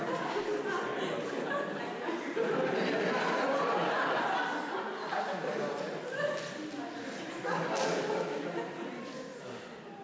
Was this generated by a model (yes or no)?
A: no